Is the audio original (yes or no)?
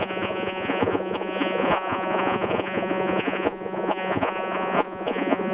no